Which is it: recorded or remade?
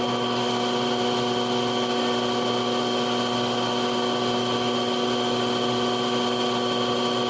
recorded